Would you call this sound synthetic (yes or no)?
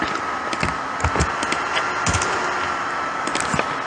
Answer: no